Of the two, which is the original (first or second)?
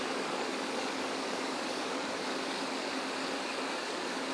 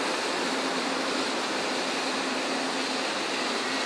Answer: second